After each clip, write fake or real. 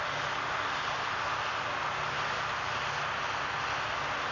real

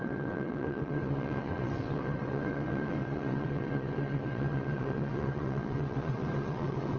fake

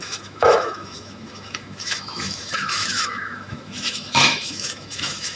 fake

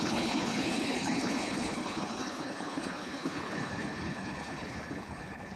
fake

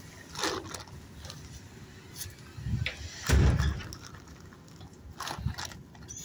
real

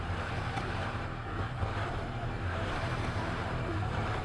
fake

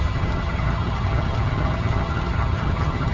fake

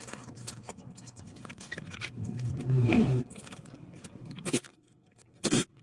fake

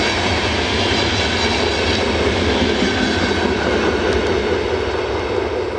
real